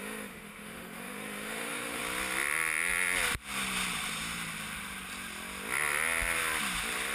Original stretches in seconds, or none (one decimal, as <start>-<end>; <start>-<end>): 2.0-7.1